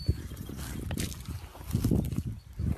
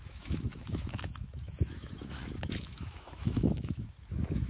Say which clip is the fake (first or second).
second